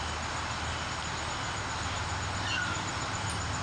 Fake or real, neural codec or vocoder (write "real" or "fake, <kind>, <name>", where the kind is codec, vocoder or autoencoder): real